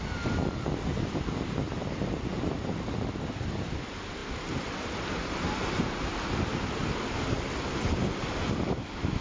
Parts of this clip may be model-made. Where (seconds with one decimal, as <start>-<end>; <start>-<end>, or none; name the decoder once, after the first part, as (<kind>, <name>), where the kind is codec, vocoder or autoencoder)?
none